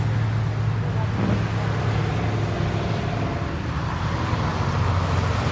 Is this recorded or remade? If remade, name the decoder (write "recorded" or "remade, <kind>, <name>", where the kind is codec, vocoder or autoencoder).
recorded